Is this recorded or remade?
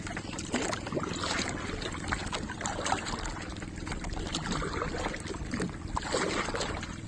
recorded